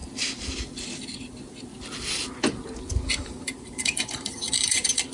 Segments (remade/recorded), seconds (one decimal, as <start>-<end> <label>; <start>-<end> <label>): 0.0-3.1 recorded; 3.1-5.1 remade